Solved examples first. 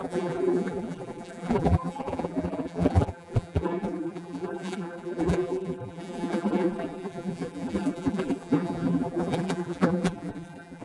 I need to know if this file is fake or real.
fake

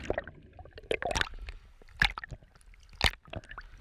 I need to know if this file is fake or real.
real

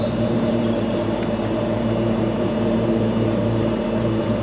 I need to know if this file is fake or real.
fake